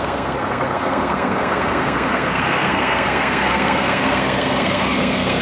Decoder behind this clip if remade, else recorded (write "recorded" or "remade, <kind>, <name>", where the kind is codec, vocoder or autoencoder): remade, codec, SNAC